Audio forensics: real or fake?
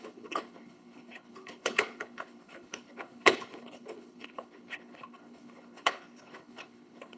fake